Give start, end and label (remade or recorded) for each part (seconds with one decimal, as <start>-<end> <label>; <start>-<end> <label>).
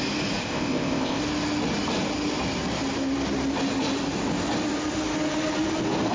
0.0-0.4 recorded; 0.4-1.2 remade; 1.2-6.1 recorded